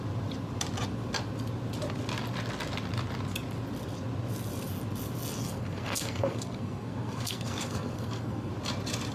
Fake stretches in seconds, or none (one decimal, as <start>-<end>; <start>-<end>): 5.4-8.5